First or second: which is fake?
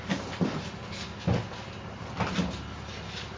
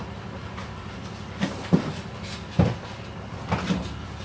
second